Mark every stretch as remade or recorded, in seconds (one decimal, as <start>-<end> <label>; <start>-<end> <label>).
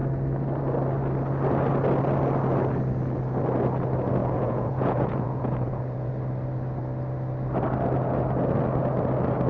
0.0-4.2 recorded; 4.2-6.1 remade; 6.1-9.5 recorded